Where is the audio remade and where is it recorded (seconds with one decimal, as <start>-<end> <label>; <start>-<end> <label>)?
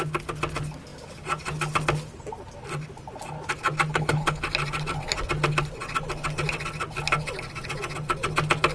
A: 0.0-3.9 recorded; 3.9-4.4 remade; 4.4-8.7 recorded